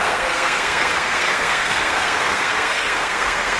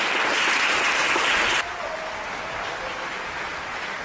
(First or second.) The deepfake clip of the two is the first